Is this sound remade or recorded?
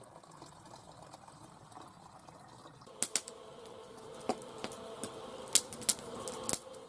recorded